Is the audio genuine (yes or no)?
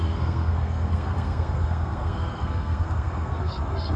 no